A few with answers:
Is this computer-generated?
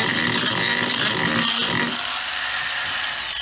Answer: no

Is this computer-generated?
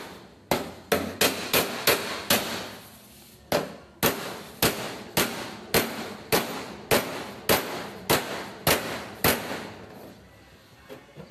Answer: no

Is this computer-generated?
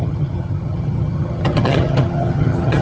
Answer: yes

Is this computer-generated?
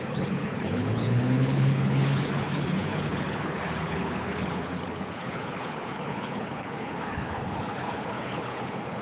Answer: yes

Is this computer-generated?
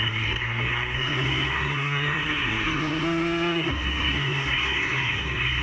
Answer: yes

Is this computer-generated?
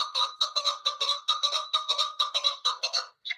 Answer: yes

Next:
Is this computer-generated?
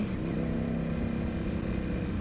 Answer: no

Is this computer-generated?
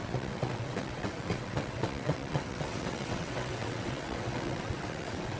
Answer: yes